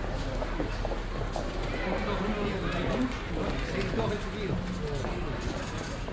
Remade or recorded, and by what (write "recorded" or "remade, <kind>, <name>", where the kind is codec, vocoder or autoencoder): recorded